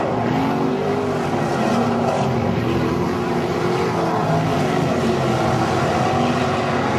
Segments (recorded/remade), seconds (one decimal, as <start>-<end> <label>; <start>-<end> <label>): 0.0-7.0 recorded